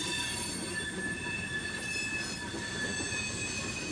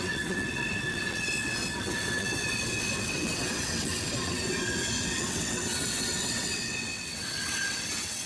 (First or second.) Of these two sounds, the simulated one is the second